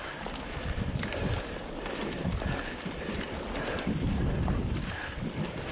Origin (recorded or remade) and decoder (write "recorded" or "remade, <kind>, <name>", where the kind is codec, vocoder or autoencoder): remade, vocoder, BigVGAN v2